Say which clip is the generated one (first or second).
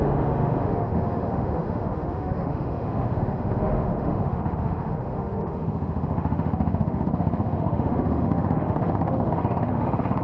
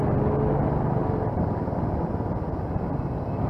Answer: first